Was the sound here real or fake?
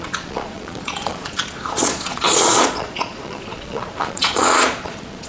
fake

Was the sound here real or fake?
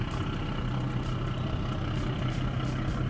real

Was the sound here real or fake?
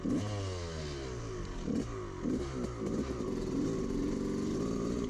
real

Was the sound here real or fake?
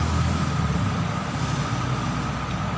real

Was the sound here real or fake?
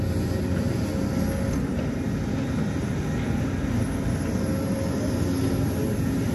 real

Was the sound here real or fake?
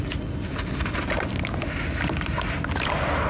real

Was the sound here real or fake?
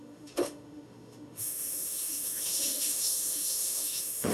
fake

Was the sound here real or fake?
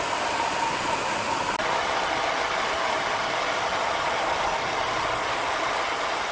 real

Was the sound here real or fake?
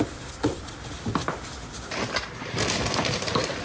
real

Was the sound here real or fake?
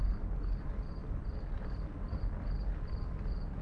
real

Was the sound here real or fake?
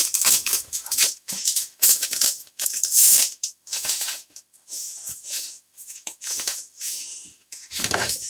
fake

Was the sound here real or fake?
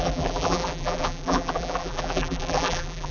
fake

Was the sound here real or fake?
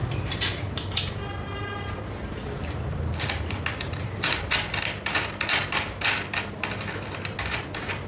real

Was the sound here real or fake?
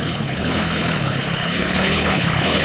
fake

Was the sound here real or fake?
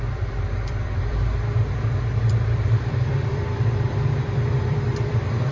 fake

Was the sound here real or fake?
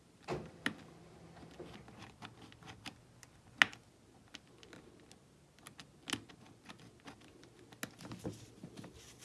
real